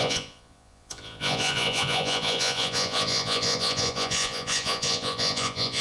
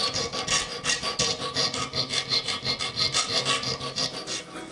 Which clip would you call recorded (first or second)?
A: second